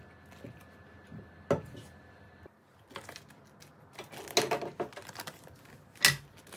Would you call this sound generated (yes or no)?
no